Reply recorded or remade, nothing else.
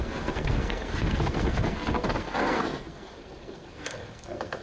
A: remade